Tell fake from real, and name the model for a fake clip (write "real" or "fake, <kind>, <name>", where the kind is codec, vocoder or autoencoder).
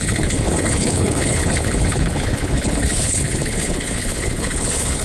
fake, codec, HILCodec